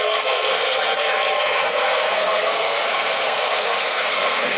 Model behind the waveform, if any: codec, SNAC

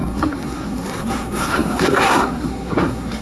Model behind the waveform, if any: codec, SNAC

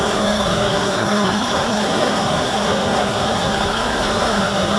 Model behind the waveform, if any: codec, SNAC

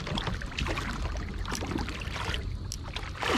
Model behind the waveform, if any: none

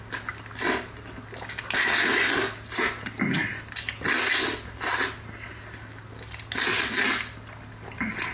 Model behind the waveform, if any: none